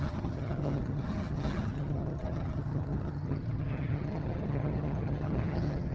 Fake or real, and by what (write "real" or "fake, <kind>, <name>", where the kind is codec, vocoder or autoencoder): fake, vocoder, HiFi-GAN